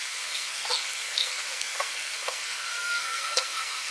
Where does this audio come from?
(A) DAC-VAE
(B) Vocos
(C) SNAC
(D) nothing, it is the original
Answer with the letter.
C